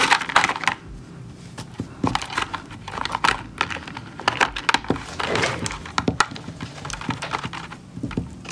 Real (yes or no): yes